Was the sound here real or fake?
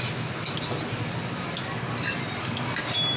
real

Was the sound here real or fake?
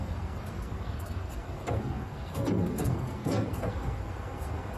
fake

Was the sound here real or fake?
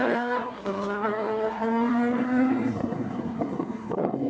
fake